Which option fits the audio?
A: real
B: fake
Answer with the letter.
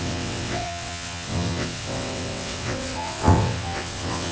B